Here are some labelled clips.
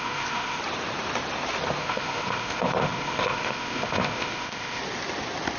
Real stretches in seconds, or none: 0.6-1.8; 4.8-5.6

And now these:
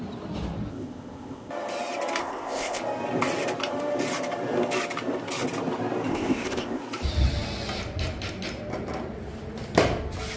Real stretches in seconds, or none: 0.0-0.7; 1.5-2.2; 2.8-6.1; 6.8-10.4

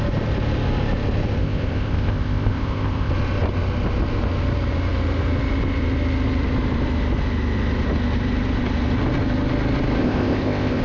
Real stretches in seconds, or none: 0.0-1.4; 3.1-10.0

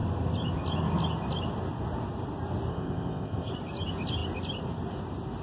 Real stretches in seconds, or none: 0.0-2.7; 3.5-5.4

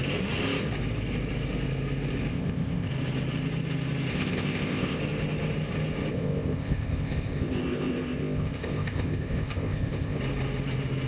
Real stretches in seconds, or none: 0.0-2.3; 2.9-4.1; 5.0-6.1; 10.2-11.1

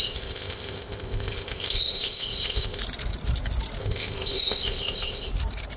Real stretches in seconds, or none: 2.8-3.8; 5.3-5.8

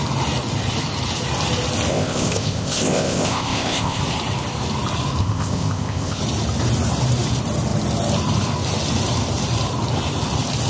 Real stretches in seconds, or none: 0.0-1.9; 4.0-5.2; 6.2-10.7

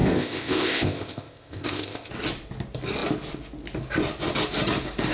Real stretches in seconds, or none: 2.1-5.1